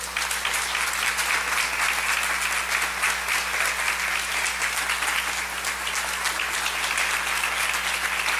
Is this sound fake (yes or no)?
no